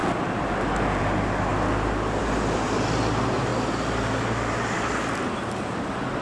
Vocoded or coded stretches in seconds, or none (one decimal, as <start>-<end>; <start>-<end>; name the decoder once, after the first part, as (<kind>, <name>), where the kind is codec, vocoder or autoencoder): none